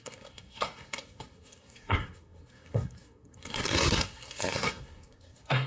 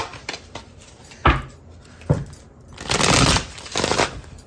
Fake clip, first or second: first